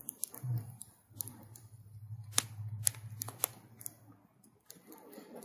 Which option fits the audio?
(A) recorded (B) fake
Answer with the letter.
A